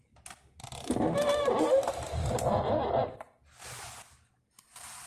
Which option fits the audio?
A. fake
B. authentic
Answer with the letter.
B